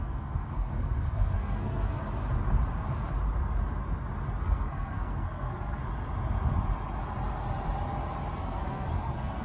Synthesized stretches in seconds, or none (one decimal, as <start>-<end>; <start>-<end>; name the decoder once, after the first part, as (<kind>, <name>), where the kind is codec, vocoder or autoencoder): 0.0-2.0 (codec, SNAC); 4.4-5.8; 8.4-9.4